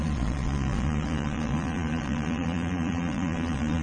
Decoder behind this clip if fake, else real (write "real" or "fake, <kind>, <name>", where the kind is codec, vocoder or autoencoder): fake, vocoder, Vocos